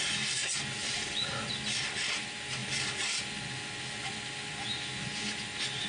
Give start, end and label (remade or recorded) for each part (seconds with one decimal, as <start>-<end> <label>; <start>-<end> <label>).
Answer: 0.0-0.8 recorded; 0.8-1.5 remade; 1.5-2.6 recorded; 2.6-3.2 remade; 3.2-5.9 recorded